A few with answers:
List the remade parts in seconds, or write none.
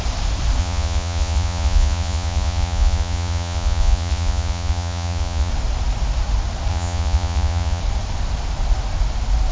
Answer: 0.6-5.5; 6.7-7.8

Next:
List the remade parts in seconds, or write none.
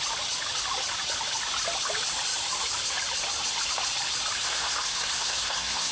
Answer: 4.4-5.9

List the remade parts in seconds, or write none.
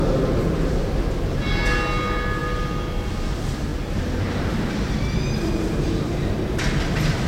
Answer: none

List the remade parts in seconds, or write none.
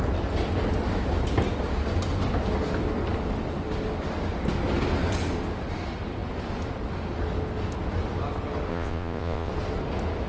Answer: 8.7-9.5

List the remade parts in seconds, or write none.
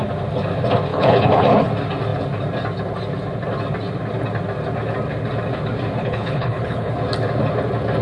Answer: 0.9-1.7; 6.0-6.9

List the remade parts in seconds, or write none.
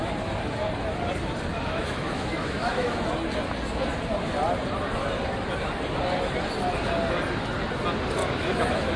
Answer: 1.5-3.1; 8.2-9.0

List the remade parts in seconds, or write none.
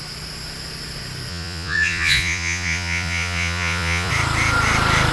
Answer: 1.3-4.1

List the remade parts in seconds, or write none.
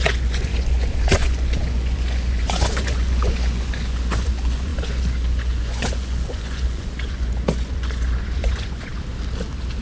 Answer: 0.0-8.9